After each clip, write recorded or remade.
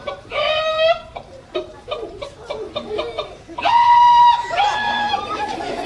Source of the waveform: remade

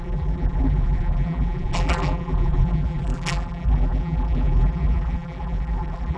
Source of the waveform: remade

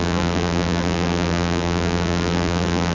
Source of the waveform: remade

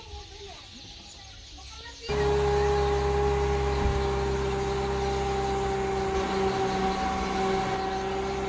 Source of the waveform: recorded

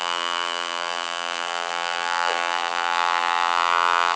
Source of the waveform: remade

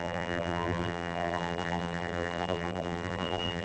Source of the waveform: remade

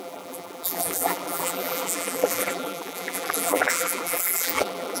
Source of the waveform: remade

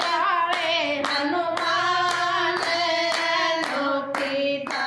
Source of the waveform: recorded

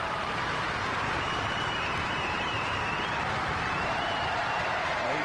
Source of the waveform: remade